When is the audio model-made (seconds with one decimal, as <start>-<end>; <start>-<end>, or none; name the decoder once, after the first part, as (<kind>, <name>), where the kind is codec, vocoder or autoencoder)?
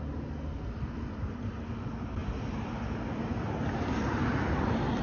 none